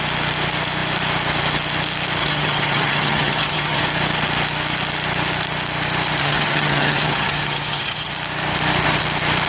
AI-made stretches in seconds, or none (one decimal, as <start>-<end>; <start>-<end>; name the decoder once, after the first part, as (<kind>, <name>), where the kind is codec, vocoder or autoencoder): 2.2-3.8 (vocoder, HiFi-GAN); 6.2-8.1